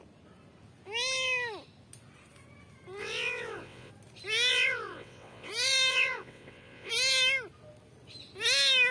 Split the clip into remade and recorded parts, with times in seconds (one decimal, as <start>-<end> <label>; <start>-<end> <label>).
0.0-3.0 recorded; 3.0-3.9 remade; 3.9-4.5 recorded; 4.5-5.5 remade; 5.5-5.9 recorded; 5.9-6.9 remade; 6.9-8.9 recorded